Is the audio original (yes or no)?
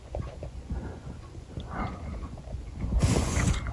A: no